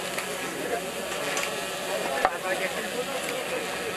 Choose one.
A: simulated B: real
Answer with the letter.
B